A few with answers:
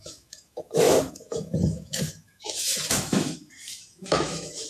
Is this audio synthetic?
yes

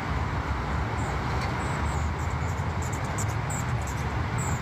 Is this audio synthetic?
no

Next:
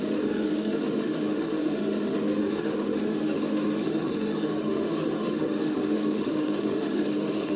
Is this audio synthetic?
yes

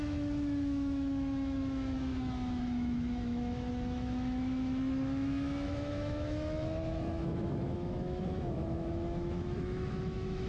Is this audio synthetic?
yes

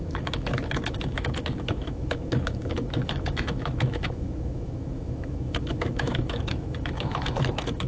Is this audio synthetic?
yes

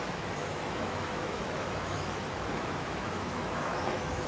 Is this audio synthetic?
yes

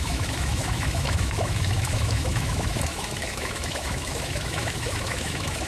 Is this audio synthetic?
yes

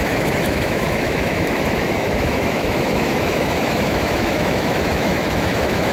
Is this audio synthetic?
yes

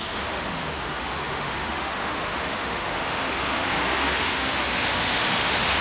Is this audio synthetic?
yes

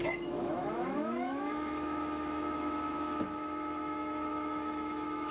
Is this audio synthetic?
yes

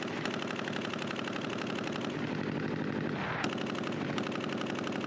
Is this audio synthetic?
no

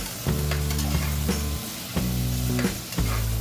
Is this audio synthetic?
no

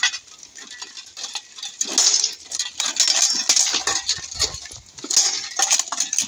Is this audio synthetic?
no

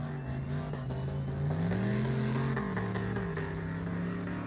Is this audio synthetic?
no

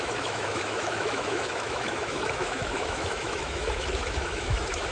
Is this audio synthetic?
yes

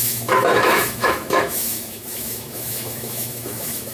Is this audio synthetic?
yes